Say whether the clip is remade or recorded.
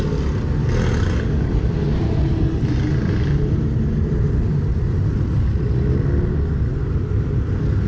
recorded